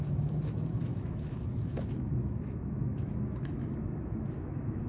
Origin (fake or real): fake